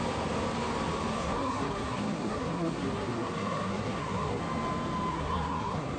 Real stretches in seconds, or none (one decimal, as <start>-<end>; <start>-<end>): 0.0-1.1; 4.4-5.1